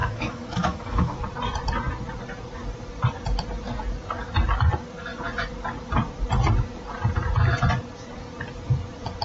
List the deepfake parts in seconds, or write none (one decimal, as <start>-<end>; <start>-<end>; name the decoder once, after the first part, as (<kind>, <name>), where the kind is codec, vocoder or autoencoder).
0.0-1.2 (autoencoder, DAC-VAE)